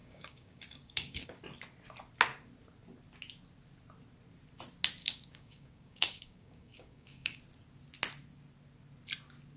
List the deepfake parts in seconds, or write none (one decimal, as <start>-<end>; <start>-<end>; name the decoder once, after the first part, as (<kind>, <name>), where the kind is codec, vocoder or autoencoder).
0.0-1.4 (codec, DAC); 5.0-7.4